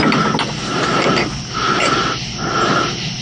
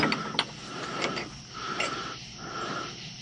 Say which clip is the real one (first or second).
first